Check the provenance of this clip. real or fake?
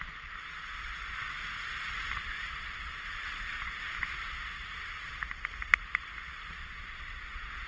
real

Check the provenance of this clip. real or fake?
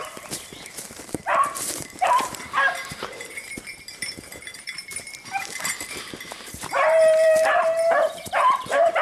fake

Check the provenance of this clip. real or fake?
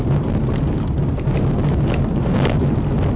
real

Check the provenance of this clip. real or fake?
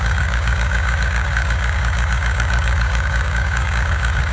fake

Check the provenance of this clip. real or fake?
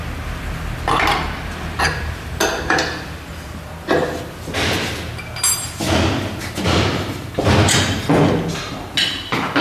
real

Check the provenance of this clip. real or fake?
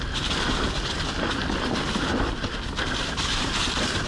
real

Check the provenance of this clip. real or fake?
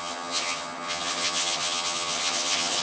fake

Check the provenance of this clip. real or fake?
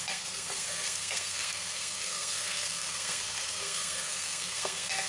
fake